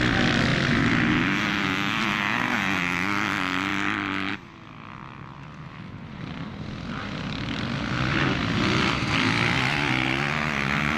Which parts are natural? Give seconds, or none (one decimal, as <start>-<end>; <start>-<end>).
0.0-11.0